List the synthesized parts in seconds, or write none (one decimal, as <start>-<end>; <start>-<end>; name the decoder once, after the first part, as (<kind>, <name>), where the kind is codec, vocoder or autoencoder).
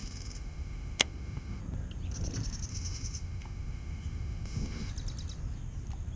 0.0-1.6 (autoencoder, DAC-VAE); 2.7-4.9